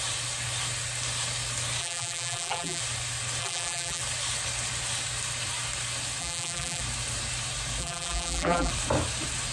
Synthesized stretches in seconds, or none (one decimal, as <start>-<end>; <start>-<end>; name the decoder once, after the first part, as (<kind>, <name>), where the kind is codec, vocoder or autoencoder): 1.8-2.8 (vocoder, BigVGAN v2); 3.4-4.0; 6.2-6.8; 7.8-8.7